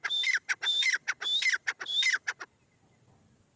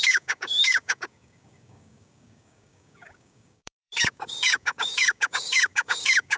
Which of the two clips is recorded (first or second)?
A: first